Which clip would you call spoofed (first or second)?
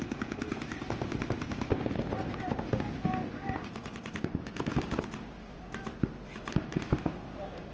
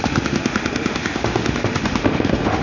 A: second